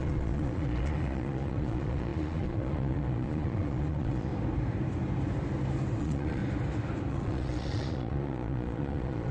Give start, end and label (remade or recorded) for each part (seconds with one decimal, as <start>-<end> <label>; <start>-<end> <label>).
0.0-4.3 remade; 4.3-6.0 recorded; 6.0-6.4 remade; 6.4-7.1 recorded; 7.1-9.3 remade

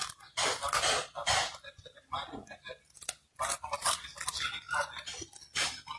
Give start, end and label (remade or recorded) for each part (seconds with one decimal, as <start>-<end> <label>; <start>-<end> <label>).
0.0-6.0 recorded

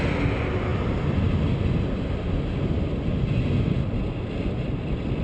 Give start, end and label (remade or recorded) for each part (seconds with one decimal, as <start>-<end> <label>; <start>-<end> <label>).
0.0-5.2 recorded